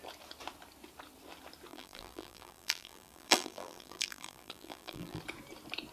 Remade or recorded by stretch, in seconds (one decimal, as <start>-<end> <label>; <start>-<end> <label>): 0.0-1.7 recorded; 1.7-5.2 remade; 5.2-5.9 recorded